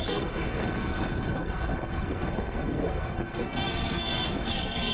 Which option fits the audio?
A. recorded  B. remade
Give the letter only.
B